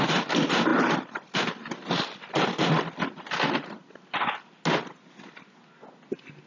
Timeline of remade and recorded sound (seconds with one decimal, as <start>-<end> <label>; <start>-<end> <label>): 0.0-6.5 recorded